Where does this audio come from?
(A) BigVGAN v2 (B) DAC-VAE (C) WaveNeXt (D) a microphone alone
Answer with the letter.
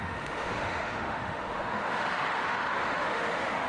B